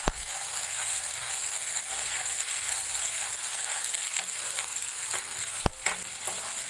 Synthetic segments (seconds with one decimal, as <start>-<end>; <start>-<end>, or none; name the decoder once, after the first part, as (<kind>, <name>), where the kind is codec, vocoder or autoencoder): 0.0-5.7 (codec, SNAC)